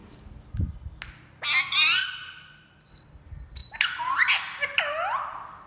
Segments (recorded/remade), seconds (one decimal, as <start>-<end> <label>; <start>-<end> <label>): 0.0-5.7 recorded